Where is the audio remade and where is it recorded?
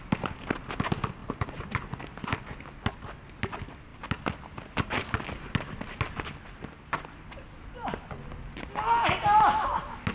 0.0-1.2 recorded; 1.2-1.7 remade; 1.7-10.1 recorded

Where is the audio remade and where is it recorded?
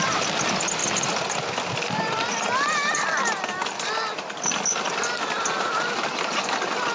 0.0-6.9 recorded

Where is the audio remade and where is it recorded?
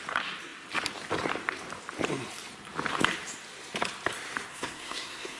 0.0-4.5 recorded; 4.5-5.4 remade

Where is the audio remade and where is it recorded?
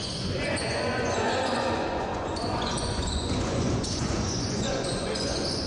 0.0-5.7 remade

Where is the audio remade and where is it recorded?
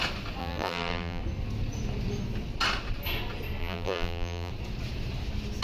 0.0-0.4 recorded; 0.4-1.2 remade; 1.2-3.6 recorded; 3.6-4.5 remade; 4.5-5.6 recorded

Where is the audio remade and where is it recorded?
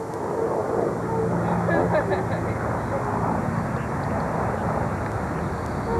0.0-6.0 recorded